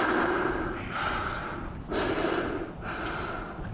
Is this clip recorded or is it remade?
recorded